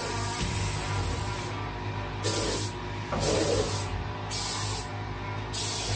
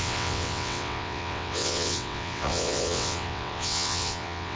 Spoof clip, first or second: second